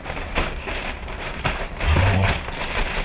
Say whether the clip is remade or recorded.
remade